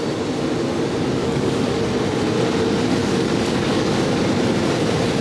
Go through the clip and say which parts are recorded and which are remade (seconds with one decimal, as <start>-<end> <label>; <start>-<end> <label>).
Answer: 0.0-1.2 recorded; 1.2-1.8 remade; 1.8-3.0 recorded; 3.0-4.2 remade; 4.2-5.2 recorded